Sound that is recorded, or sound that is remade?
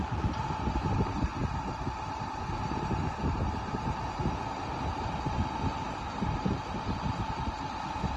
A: recorded